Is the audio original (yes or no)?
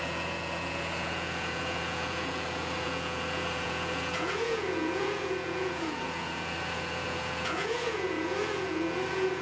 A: no